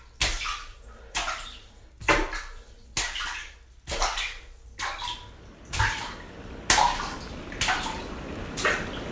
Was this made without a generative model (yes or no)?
yes